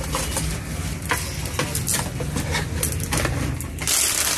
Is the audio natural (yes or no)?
yes